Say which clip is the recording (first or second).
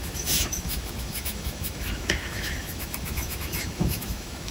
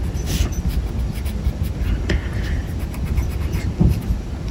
second